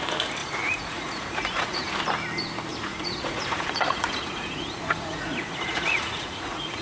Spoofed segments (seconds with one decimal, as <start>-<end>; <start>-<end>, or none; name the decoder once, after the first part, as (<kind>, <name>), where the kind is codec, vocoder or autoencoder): 0.4-1.9 (vocoder, Vocos); 2.7-6.8